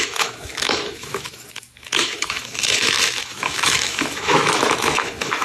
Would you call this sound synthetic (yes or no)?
yes